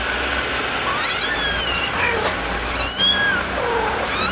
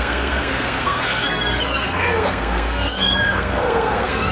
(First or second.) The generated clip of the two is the second